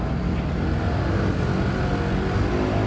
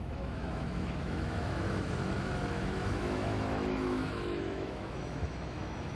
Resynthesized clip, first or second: second